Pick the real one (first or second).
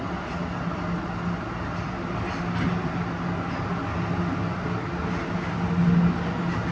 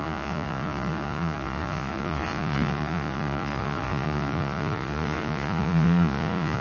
first